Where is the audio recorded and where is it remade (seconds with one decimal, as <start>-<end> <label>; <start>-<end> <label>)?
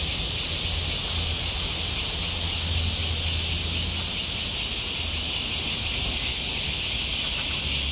0.0-6.3 recorded; 6.3-6.8 remade; 6.8-7.9 recorded